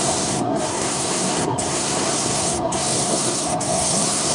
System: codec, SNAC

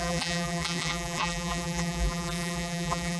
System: vocoder, BigVGAN v2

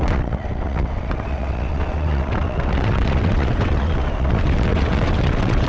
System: vocoder, WaveNeXt